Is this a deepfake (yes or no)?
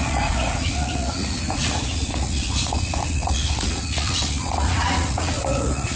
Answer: yes